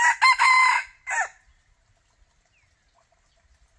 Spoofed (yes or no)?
no